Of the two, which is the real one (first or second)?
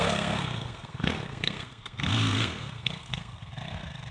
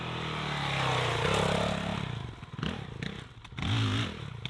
second